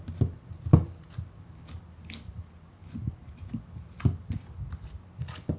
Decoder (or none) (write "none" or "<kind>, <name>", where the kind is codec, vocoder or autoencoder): none